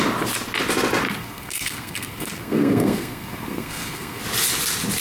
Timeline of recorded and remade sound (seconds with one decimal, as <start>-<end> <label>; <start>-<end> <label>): 0.0-1.2 recorded; 1.2-4.2 remade; 4.2-5.0 recorded